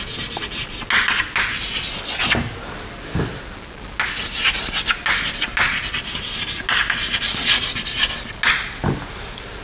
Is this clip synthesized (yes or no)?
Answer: no